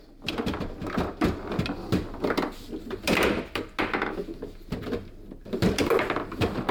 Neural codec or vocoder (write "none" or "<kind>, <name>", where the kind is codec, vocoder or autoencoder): none